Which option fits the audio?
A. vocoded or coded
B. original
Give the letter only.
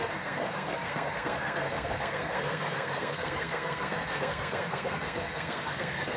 A